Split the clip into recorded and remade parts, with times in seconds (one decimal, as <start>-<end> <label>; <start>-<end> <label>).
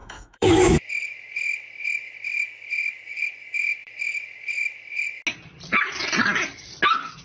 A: 0.0-0.9 remade; 0.9-7.2 recorded